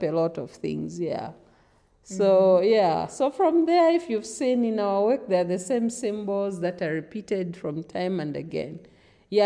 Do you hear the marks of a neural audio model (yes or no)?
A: no